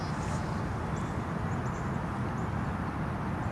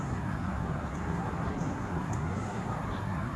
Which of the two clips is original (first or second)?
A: first